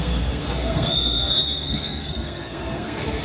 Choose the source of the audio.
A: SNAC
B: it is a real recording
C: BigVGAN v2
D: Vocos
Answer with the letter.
A